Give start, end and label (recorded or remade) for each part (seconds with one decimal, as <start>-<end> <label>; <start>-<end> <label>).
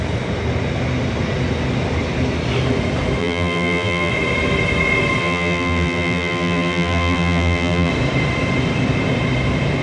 0.0-3.2 recorded; 3.2-4.1 remade; 4.1-5.2 recorded; 5.2-7.9 remade; 7.9-9.8 recorded